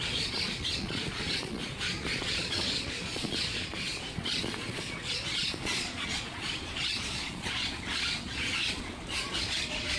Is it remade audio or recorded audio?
remade